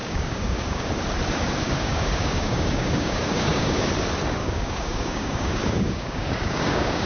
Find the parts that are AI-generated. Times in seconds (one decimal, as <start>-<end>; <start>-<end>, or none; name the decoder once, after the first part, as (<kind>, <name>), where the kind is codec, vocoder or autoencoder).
0.0-0.9 (codec, DAC); 1.6-3.9; 4.4-7.1